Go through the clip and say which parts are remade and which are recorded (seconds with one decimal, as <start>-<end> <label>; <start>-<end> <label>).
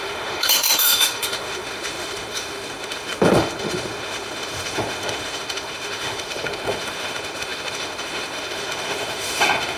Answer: 0.0-9.8 remade